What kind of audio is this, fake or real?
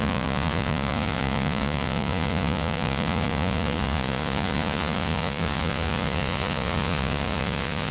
fake